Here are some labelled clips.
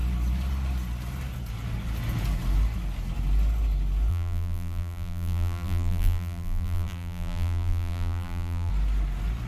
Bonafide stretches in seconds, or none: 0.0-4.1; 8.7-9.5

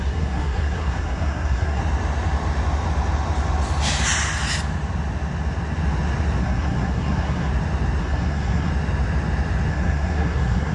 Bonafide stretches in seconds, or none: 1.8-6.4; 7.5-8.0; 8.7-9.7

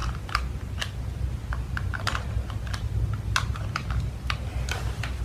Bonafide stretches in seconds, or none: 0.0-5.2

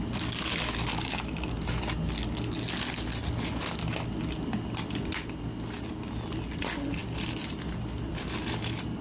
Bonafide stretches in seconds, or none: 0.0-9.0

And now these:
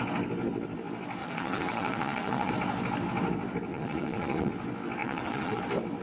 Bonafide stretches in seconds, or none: 0.0-1.2; 2.5-3.7; 4.5-5.0; 5.6-6.0